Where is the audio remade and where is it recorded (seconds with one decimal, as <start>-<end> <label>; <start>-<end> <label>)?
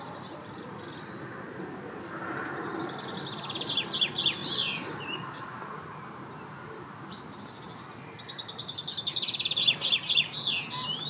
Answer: 0.0-4.4 recorded; 4.4-5.1 remade; 5.1-11.1 recorded